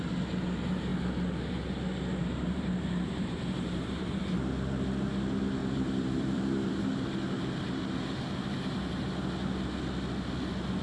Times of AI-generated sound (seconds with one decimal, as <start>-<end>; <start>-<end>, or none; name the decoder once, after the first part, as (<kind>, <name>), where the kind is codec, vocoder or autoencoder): 2.2-4.2 (vocoder, BigVGAN v2); 5.6-6.8